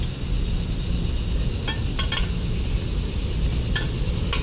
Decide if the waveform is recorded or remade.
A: recorded